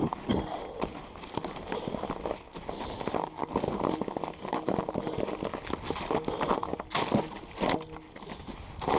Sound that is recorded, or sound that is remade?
recorded